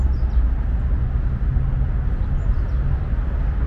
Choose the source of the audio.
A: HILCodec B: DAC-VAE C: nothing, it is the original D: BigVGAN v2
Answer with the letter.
C